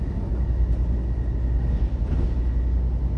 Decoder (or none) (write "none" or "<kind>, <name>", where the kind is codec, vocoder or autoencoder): none